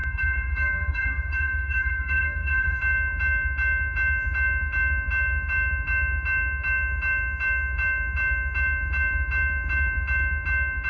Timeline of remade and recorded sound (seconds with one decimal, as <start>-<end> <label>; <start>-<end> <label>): 0.0-2.8 remade; 2.8-10.9 recorded